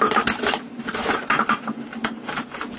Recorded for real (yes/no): yes